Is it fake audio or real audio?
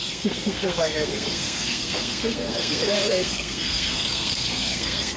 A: fake